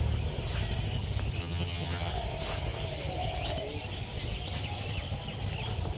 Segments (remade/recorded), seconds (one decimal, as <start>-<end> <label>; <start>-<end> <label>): 0.0-1.4 recorded; 1.4-2.1 remade; 2.1-6.0 recorded